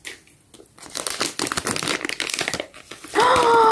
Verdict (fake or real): real